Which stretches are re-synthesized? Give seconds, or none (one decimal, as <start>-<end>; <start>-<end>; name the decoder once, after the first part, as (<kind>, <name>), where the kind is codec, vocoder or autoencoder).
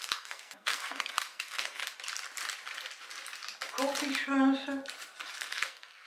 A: 0.0-1.8 (codec, SNAC); 5.4-6.1